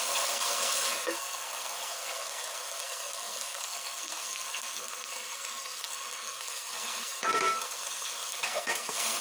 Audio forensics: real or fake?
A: fake